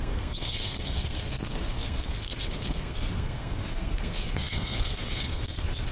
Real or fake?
fake